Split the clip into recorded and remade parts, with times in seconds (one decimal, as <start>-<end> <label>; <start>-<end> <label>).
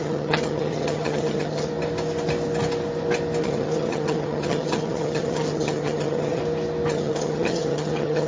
0.0-1.7 remade; 1.7-3.4 recorded; 3.4-6.4 remade; 6.4-6.9 recorded; 6.9-8.3 remade